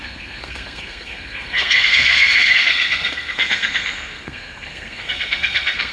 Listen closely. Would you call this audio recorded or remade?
remade